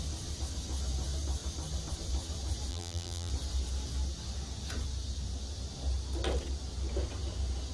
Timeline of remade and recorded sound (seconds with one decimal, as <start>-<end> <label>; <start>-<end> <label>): 0.0-2.7 recorded; 2.7-3.3 remade; 3.3-7.7 recorded